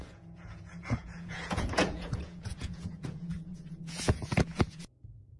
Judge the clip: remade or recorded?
remade